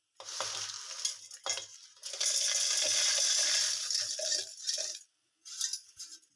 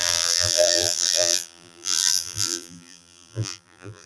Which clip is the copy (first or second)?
second